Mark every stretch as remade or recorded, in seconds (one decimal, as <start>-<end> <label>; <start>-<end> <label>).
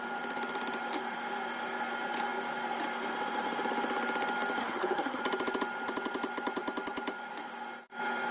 0.0-4.6 recorded; 4.6-5.2 remade; 5.2-8.3 recorded